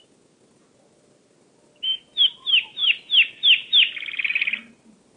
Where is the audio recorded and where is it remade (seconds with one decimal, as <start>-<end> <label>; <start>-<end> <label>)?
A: 0.0-5.2 recorded

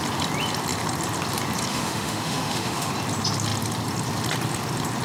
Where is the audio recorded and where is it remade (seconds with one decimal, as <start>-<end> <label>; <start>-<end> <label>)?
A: 0.0-1.7 recorded; 1.7-2.9 remade; 2.9-5.0 recorded